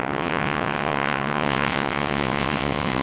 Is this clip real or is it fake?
fake